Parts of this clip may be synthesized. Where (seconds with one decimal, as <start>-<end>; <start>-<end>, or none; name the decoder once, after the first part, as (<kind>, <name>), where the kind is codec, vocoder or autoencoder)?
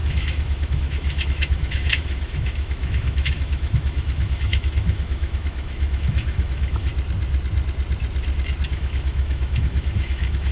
0.0-6.9 (autoencoder, DAC-VAE); 8.7-10.5